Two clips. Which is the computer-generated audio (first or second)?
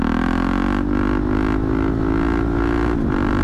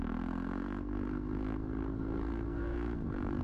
second